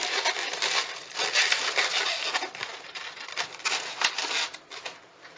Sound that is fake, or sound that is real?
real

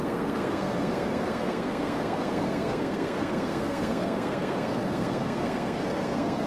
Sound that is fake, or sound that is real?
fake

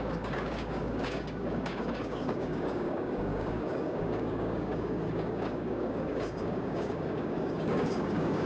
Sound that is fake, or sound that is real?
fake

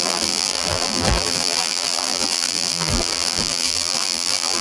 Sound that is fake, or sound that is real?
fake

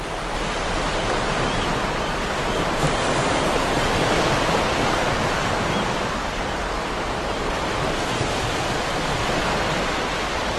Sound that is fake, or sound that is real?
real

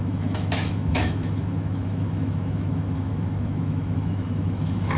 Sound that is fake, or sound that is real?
fake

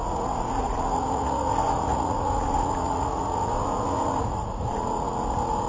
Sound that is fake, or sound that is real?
fake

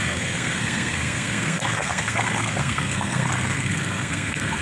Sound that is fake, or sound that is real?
fake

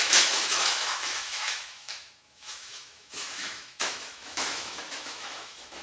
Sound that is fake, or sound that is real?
fake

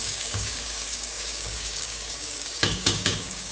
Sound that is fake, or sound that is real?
fake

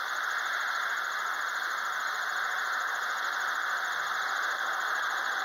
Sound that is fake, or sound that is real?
real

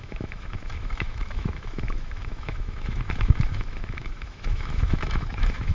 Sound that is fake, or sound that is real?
fake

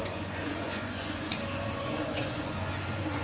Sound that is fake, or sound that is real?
fake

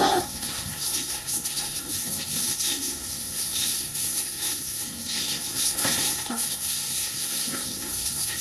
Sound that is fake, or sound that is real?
fake